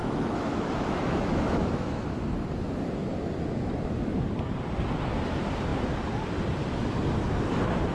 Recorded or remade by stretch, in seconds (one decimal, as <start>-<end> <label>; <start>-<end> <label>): 0.0-2.2 remade; 2.2-7.9 recorded

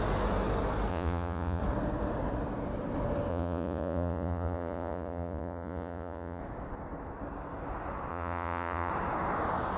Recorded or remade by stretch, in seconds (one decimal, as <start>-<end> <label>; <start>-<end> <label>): 0.0-0.9 recorded; 0.9-1.6 remade; 1.6-3.3 recorded; 3.3-6.4 remade; 6.4-8.1 recorded; 8.1-8.9 remade; 8.9-9.8 recorded

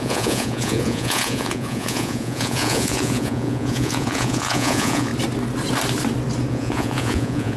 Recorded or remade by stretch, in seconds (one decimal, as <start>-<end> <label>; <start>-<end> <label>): 0.0-5.1 remade; 5.1-6.5 recorded; 6.5-7.6 remade

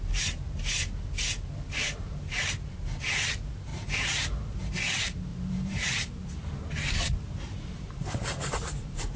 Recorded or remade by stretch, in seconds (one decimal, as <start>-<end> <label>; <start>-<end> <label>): 0.0-1.8 recorded; 1.8-2.5 remade; 2.5-3.7 recorded; 3.7-4.6 remade; 4.6-5.3 recorded; 5.3-9.2 remade